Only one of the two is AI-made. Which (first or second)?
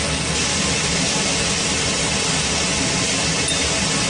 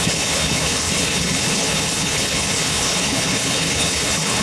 second